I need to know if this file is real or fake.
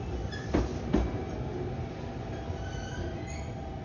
real